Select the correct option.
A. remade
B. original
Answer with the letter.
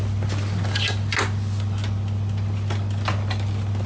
B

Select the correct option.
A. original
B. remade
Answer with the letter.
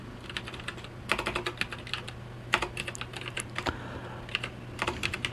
A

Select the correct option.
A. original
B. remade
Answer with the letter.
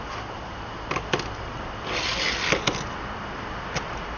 A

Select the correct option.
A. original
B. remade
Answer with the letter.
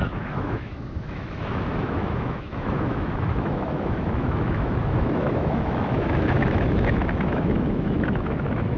B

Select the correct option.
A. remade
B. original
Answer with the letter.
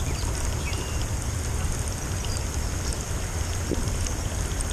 B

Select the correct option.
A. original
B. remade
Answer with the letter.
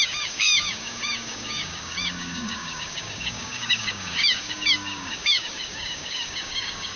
B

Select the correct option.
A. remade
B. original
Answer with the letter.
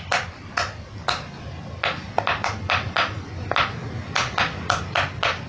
B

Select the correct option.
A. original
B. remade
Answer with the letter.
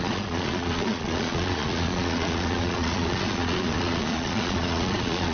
B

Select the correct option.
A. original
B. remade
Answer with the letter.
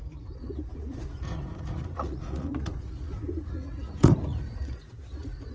B